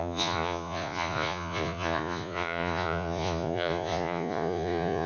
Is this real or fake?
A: fake